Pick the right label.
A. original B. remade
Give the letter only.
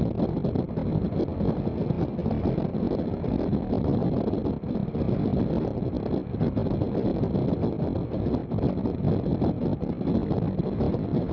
A